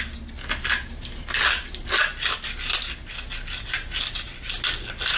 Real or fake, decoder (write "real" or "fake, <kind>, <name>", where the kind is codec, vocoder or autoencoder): real